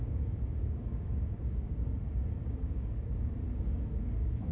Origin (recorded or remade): remade